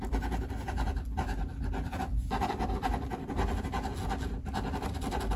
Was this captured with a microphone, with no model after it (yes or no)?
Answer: yes